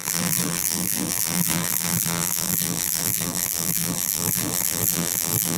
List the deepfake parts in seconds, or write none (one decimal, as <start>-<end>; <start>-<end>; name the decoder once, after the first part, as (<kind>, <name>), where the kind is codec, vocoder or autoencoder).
0.0-5.6 (vocoder, BigVGAN v2)

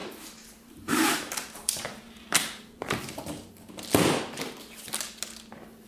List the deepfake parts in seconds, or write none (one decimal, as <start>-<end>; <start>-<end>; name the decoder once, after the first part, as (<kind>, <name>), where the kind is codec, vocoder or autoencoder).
0.0-3.5 (vocoder, BigVGAN v2)

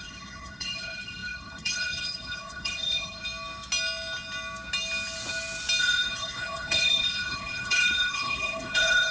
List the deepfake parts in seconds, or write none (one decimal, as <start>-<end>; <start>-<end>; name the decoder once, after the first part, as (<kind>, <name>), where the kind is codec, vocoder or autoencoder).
0.0-3.2 (codec, HILCodec); 5.8-9.1

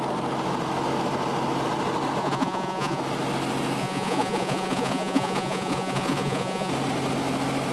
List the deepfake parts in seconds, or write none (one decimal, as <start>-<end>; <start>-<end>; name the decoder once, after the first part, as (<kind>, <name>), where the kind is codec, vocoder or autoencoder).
2.2-3.0 (vocoder, Vocos); 3.8-6.7

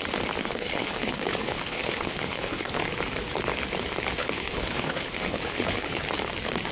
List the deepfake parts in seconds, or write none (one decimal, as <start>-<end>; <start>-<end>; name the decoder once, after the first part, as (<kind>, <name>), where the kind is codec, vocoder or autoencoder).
0.4-2.8 (codec, HILCodec); 4.2-6.0

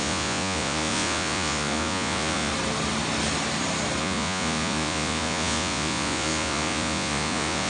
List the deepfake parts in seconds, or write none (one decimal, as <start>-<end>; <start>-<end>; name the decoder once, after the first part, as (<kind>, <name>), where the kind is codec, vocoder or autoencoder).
0.0-2.5 (vocoder, Vocos); 4.0-7.7